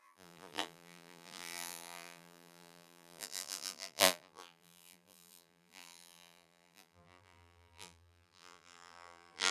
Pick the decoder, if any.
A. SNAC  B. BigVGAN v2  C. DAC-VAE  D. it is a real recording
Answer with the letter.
B